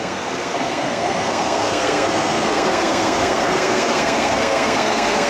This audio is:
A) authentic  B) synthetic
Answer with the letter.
B